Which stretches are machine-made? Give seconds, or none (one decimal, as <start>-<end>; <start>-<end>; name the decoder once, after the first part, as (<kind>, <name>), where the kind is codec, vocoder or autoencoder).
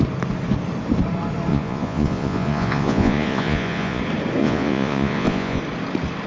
1.5-4.0 (vocoder, Vocos); 4.4-5.6